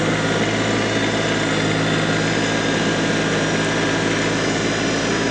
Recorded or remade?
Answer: recorded